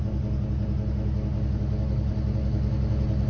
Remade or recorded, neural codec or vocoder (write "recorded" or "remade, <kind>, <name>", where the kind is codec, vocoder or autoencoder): recorded